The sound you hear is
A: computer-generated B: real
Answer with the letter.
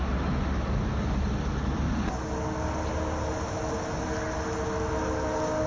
B